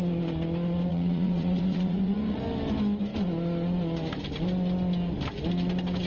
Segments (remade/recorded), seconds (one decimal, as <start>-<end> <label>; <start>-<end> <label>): 0.0-0.9 recorded; 0.9-2.4 remade; 2.4-6.1 recorded